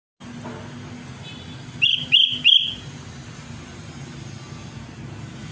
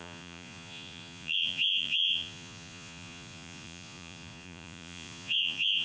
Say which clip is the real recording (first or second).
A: first